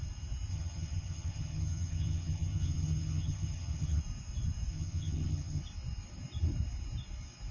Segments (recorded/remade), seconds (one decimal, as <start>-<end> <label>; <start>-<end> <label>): 0.0-0.5 recorded; 0.5-4.0 remade; 4.0-4.7 recorded; 4.7-5.6 remade; 5.6-7.5 recorded